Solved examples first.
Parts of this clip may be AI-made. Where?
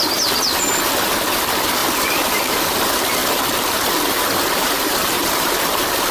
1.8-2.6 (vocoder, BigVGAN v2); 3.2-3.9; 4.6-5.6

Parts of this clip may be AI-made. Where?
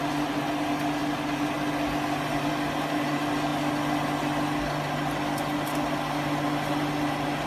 none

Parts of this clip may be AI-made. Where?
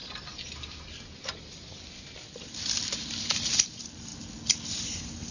3.2-4.1 (vocoder, BigVGAN v2); 4.8-5.3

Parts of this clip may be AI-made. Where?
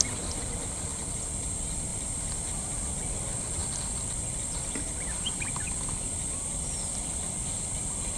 1.9-2.4 (vocoder, BigVGAN v2)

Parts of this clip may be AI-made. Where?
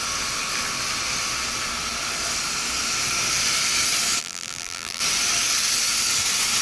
4.2-5.0 (vocoder, BigVGAN v2)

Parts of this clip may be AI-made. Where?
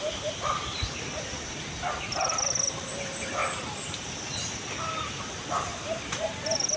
0.0-3.4 (vocoder, BigVGAN v2); 5.1-6.8